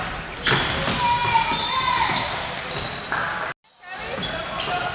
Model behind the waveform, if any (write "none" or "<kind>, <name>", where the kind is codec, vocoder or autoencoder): none